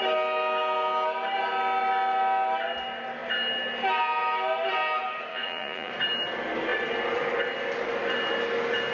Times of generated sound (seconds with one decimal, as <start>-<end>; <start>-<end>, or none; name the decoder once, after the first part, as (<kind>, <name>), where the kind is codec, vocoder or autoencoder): 5.3-5.9 (vocoder, Vocos)